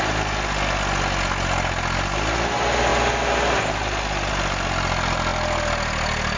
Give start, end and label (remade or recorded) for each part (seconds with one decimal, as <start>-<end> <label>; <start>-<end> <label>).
0.0-6.4 recorded